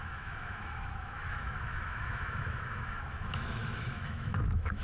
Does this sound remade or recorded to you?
remade